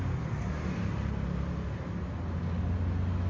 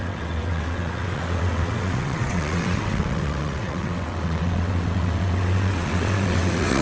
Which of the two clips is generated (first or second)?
second